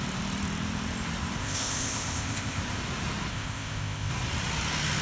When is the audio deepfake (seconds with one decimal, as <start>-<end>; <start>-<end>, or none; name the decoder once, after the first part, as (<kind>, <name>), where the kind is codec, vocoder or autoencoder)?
1.4-2.6 (codec, ZipCodec); 3.3-4.1